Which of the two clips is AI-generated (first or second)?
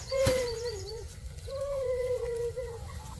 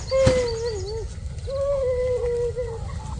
first